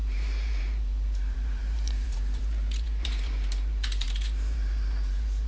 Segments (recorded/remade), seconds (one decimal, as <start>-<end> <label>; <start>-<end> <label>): 0.0-5.5 remade